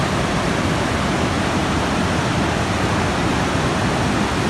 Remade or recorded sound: recorded